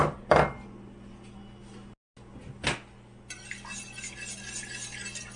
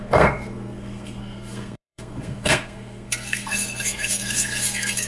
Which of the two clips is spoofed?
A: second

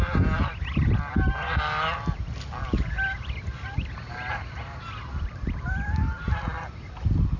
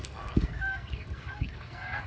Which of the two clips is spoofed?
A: second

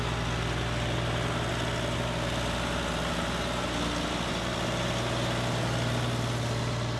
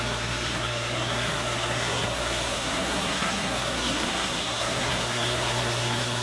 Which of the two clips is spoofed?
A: second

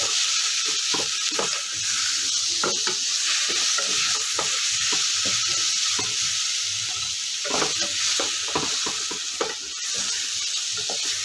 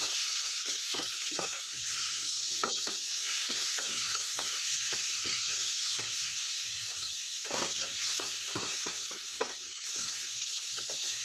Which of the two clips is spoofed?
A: second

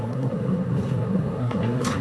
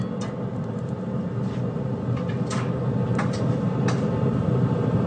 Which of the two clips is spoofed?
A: first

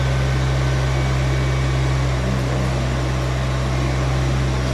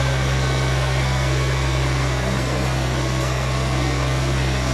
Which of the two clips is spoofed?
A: second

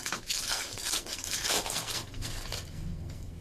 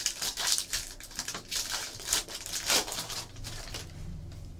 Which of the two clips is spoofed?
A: first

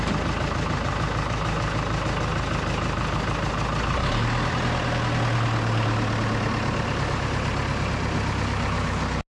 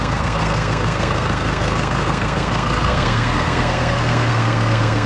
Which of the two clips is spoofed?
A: second